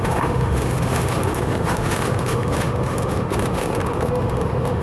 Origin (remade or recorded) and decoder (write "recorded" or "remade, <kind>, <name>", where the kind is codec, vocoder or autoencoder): remade, autoencoder, DAC-VAE